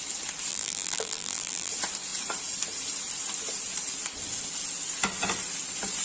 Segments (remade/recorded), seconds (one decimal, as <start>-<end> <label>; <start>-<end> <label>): 0.0-0.5 recorded; 0.5-1.7 remade; 1.7-6.0 recorded